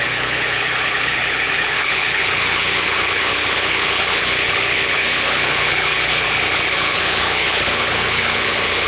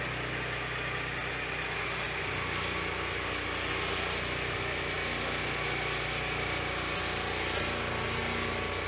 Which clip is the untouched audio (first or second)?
second